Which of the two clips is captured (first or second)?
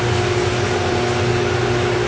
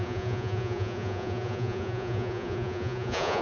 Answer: first